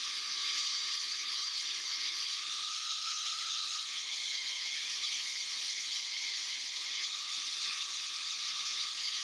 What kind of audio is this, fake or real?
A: fake